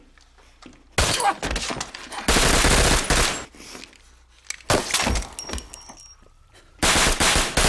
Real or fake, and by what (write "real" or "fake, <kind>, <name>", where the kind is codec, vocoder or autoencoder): real